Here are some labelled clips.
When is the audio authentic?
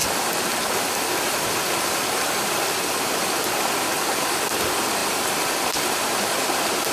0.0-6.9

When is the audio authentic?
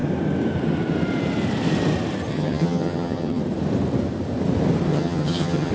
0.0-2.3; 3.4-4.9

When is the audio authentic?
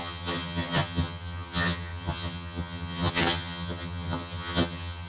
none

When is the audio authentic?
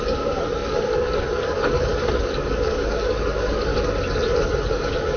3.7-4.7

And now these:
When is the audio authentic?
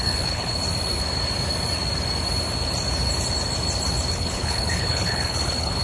0.6-4.1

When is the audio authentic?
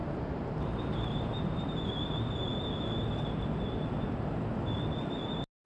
1.9-5.7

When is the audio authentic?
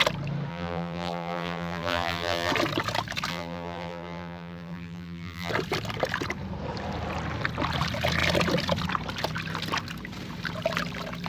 0.0-0.5; 2.5-3.3; 5.5-11.3